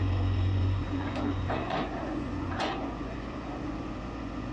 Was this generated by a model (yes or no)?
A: yes